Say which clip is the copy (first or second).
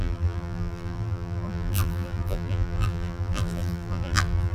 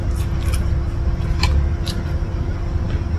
first